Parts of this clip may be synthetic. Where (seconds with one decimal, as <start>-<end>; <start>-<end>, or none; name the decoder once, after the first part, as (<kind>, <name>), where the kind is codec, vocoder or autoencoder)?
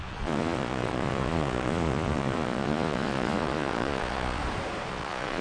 0.0-4.4 (vocoder, Vocos); 4.9-5.4